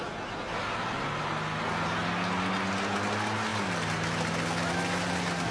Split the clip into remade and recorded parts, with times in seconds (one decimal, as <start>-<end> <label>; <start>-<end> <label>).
0.0-5.5 recorded